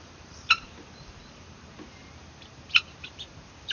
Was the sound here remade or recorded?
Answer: remade